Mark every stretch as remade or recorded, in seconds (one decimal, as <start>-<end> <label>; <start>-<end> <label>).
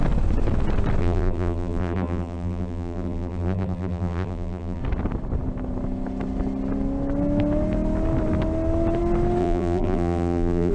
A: 0.0-1.0 recorded; 1.0-4.8 remade; 4.8-9.4 recorded; 9.4-10.7 remade